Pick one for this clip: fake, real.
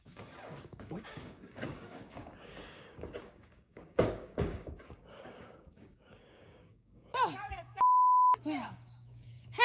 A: fake